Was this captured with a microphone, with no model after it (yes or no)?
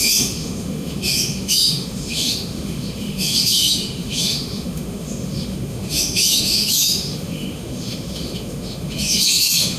no